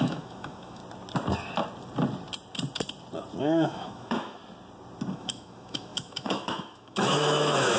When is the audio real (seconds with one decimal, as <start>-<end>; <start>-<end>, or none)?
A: 0.8-3.4; 4.4-5.1